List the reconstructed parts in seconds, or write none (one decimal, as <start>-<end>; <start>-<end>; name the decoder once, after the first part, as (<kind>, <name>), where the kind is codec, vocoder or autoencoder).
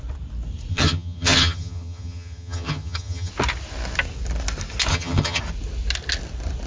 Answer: 0.7-3.3 (vocoder, HiFi-GAN); 4.9-5.4